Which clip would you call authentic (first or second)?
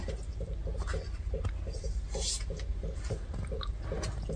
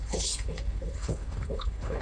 first